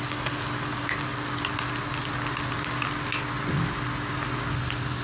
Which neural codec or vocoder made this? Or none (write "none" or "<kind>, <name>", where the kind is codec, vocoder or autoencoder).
none